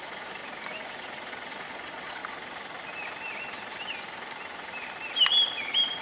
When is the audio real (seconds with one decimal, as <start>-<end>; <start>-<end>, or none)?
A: 0.4-1.3; 2.2-6.0